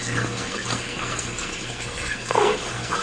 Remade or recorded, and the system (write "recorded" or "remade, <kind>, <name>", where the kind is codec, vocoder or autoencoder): remade, codec, SNAC